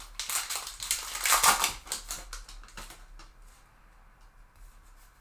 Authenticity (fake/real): real